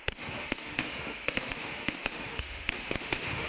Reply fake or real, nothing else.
fake